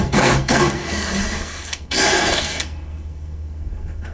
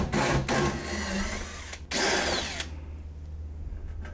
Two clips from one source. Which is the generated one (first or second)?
first